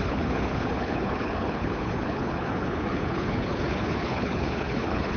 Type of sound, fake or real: fake